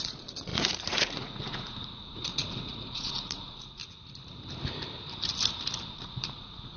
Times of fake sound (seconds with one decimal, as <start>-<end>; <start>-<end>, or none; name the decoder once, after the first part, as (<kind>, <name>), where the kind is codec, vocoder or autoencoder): 0.0-3.8 (vocoder, Vocos); 5.9-6.8